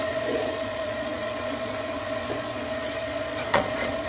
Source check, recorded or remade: remade